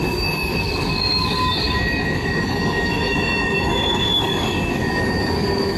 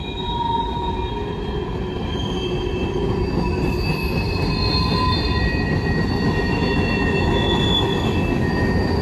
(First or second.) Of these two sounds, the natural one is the second